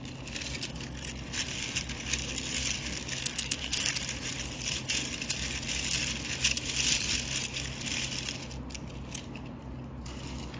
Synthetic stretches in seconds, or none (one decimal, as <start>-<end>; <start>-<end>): 3.2-3.9